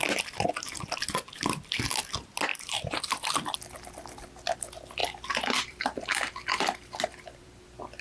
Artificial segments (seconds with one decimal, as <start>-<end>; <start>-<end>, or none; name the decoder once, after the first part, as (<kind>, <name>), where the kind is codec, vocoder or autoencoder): 2.5-3.3 (vocoder, BigVGAN v2); 5.0-7.6